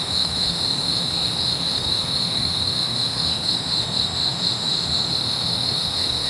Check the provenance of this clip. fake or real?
fake